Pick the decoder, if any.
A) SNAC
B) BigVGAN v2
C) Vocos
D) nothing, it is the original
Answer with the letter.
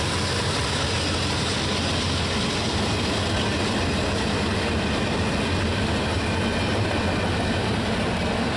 D